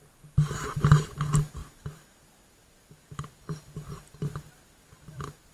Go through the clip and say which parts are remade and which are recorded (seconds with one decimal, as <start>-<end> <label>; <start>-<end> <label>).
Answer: 0.0-5.5 recorded